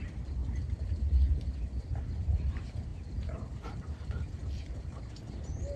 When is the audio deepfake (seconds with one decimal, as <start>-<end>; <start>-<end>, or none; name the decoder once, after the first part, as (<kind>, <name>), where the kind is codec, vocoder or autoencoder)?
0.0-0.4 (vocoder, BigVGAN v2); 1.3-4.4